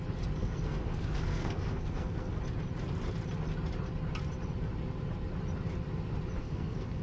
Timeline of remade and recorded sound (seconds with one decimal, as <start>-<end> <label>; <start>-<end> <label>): 0.0-0.4 recorded; 0.4-2.4 remade; 2.4-6.4 recorded; 6.4-7.0 remade